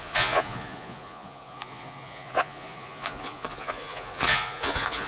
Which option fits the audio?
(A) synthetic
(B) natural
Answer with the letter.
A